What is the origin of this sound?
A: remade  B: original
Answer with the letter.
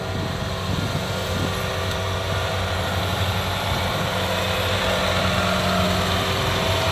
B